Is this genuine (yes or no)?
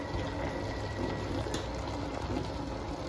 yes